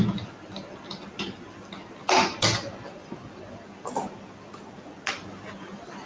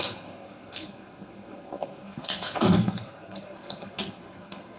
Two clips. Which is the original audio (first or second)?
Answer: first